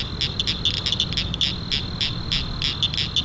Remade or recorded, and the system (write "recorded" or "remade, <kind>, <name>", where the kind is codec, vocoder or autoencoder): recorded